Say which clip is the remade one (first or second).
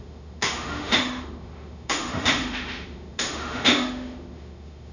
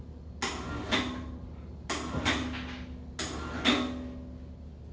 first